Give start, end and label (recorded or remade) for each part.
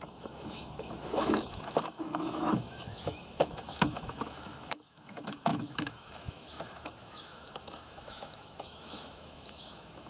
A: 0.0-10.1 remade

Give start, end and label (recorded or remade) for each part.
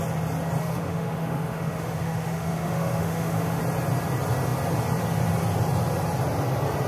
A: 0.0-0.6 recorded; 0.6-3.6 remade; 3.6-6.9 recorded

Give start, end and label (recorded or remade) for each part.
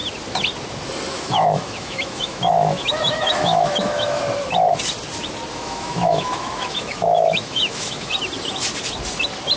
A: 0.0-1.1 recorded; 1.1-4.2 remade; 4.2-5.5 recorded; 5.5-8.1 remade; 8.1-9.6 recorded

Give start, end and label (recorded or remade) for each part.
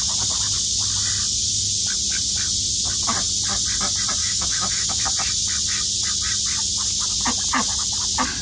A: 0.0-4.2 recorded; 4.2-5.0 remade; 5.0-8.4 recorded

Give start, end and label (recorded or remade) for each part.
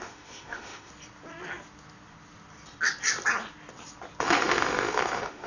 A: 0.0-0.9 remade; 0.9-4.2 recorded; 4.2-5.5 remade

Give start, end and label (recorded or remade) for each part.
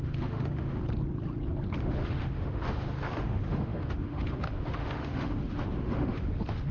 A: 0.0-0.8 remade; 0.8-1.8 recorded; 1.8-6.7 remade